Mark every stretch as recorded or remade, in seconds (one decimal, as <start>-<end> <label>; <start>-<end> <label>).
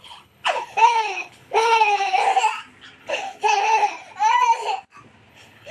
0.0-2.3 remade; 2.3-3.0 recorded; 3.0-3.9 remade; 3.9-5.3 recorded; 5.3-5.7 remade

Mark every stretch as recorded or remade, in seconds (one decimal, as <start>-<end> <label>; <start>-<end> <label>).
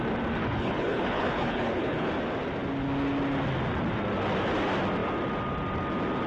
0.0-0.4 recorded; 0.4-2.1 remade; 2.1-6.3 recorded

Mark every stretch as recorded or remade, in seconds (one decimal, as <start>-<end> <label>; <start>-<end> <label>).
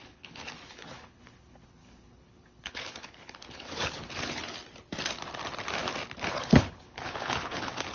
0.0-4.4 remade; 4.4-6.3 recorded; 6.3-7.9 remade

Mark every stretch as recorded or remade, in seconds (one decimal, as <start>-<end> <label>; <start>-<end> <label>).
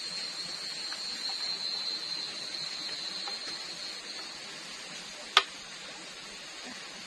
0.0-7.1 recorded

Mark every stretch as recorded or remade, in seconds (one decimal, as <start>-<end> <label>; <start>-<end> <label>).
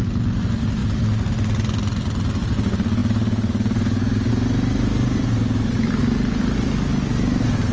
0.0-7.7 recorded